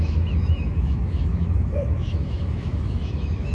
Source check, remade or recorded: remade